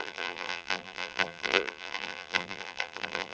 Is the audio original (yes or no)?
no